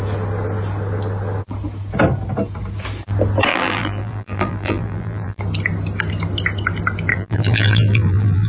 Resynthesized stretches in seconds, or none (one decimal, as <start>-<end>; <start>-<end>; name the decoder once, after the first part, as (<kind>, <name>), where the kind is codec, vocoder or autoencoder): 3.5-5.4 (vocoder, BigVGAN v2); 7.1-8.5